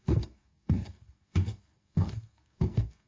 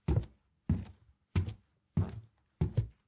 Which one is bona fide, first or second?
second